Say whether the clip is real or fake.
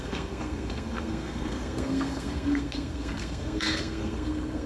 fake